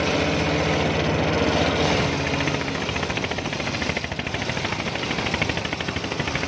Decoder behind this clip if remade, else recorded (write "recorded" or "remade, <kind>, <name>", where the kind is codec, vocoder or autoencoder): recorded